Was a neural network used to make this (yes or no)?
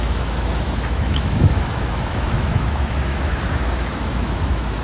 yes